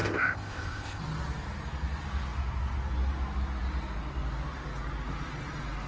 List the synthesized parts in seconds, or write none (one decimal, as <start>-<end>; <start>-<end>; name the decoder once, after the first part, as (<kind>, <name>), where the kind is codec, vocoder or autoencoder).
0.0-1.0 (codec, ZipCodec)